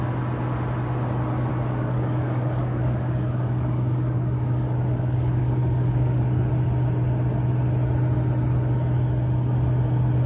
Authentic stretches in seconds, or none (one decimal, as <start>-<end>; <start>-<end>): 0.0-1.5; 6.5-10.3

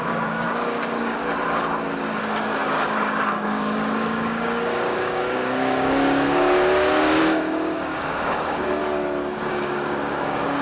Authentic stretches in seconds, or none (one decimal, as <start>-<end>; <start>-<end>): 1.2-2.2; 8.8-9.5

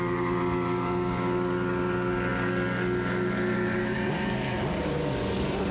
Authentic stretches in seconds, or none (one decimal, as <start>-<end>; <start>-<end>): none

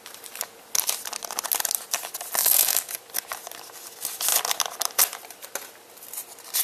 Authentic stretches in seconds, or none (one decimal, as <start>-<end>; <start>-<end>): 0.0-2.4; 2.9-6.6

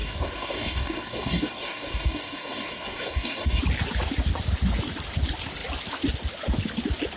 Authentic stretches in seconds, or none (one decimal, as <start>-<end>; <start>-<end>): 3.6-7.2